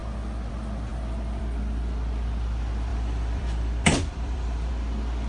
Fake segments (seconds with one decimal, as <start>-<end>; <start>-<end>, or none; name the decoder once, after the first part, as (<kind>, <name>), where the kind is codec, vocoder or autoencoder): 2.9-4.7 (vocoder, BigVGAN v2)